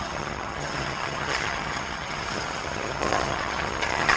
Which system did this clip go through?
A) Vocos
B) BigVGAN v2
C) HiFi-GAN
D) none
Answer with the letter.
C